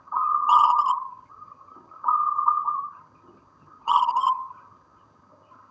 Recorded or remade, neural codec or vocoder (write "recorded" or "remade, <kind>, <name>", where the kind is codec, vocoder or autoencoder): remade, vocoder, HiFi-GAN